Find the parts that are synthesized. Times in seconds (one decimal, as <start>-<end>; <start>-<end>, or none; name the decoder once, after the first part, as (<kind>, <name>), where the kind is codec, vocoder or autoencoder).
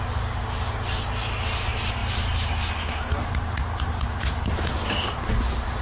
none